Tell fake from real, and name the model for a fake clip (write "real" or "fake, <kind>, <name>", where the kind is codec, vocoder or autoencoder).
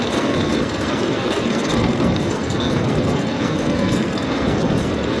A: fake, codec, SNAC